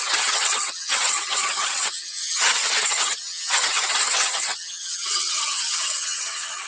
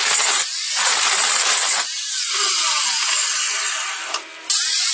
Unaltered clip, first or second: second